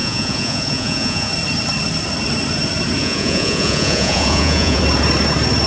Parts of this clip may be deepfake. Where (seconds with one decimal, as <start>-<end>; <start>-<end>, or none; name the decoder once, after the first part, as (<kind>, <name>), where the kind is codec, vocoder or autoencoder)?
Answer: 0.0-1.3 (vocoder, Vocos); 3.0-4.8